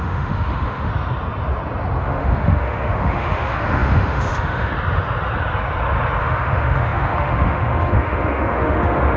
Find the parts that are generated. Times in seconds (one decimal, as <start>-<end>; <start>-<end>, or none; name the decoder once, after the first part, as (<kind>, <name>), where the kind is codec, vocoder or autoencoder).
0.0-0.9 (autoencoder, DAC-VAE); 2.0-4.7; 6.2-9.2